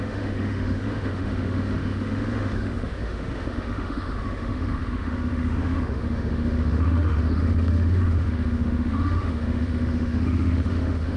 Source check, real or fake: fake